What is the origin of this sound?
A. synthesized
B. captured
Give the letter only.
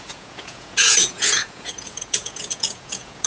A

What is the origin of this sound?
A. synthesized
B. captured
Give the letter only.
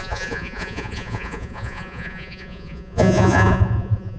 A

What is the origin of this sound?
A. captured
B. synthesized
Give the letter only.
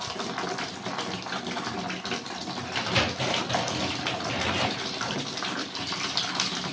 B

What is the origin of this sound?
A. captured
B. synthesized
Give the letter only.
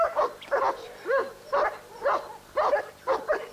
A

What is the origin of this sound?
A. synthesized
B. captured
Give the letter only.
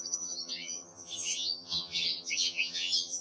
A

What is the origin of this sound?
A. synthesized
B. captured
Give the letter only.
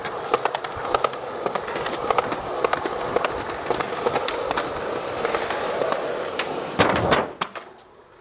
B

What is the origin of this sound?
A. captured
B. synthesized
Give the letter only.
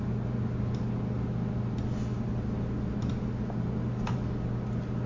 A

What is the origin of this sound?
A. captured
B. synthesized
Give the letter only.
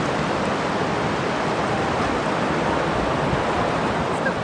A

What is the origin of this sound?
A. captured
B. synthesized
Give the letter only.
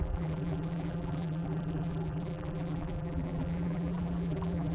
B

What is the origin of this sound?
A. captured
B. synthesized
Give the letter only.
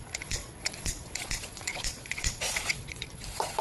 B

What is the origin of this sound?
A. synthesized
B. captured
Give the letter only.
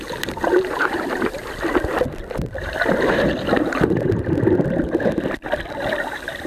B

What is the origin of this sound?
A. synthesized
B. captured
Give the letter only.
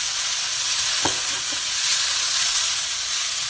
A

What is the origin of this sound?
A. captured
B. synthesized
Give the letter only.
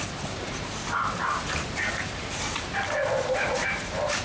B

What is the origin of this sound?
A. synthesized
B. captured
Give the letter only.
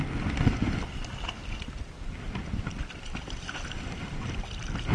B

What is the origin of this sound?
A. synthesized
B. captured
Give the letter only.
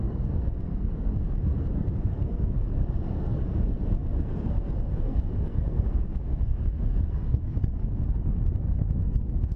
A